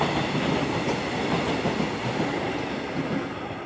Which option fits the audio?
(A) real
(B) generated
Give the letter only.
A